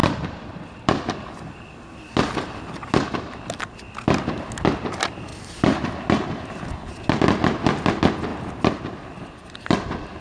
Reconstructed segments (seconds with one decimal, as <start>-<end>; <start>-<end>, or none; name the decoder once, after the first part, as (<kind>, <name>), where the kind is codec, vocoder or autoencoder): 0.0-3.6 (vocoder, BigVGAN v2); 5.3-6.0; 8.3-10.2